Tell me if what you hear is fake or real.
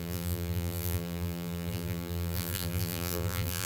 fake